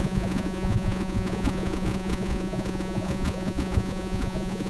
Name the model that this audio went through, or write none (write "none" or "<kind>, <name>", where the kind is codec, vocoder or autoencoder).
vocoder, Vocos